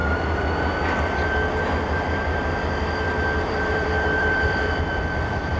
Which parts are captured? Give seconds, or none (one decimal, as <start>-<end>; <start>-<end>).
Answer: 0.0-3.4